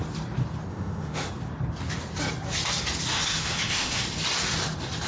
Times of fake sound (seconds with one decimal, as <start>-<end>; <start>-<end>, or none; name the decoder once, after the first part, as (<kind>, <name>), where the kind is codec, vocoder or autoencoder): 0.7-1.3 (autoencoder, DAC-VAE); 3.1-4.0